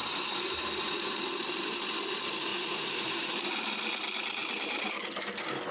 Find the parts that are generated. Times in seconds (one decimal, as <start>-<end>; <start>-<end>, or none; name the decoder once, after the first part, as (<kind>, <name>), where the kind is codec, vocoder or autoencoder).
0.0-1.2 (vocoder, BigVGAN v2); 2.5-3.7; 4.4-4.9